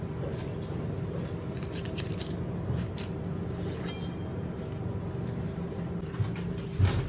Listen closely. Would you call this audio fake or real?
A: real